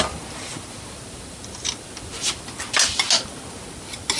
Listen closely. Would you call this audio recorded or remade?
recorded